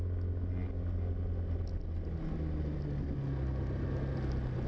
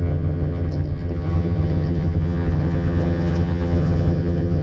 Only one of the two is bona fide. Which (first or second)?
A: first